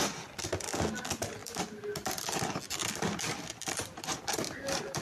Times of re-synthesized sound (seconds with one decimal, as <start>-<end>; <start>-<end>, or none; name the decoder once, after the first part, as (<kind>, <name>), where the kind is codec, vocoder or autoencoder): none